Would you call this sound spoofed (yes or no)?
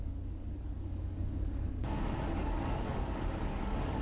yes